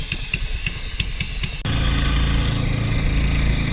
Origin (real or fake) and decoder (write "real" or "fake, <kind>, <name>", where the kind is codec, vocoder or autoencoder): real